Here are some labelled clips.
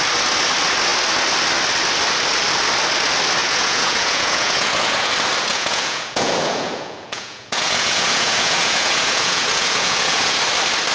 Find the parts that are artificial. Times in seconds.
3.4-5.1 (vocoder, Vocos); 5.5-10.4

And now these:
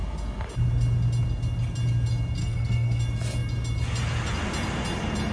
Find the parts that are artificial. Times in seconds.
2.4-3.0 (codec, SNAC)

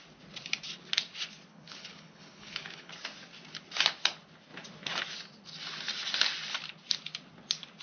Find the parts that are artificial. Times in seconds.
1.5-2.9 (codec, HILCodec)

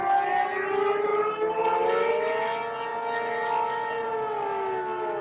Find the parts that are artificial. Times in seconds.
none

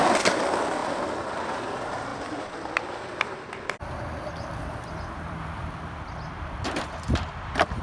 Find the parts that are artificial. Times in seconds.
0.0-7.8 (vocoder, BigVGAN v2)

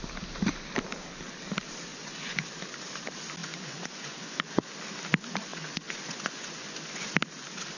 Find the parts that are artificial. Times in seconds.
1.9-2.5 (vocoder, Vocos); 3.4-4.7; 5.5-7.1